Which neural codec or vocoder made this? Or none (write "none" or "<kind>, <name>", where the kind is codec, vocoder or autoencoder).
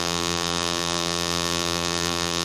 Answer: vocoder, BigVGAN v2